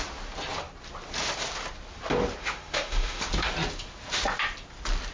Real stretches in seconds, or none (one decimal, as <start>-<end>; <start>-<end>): 0.0-2.4; 3.2-5.1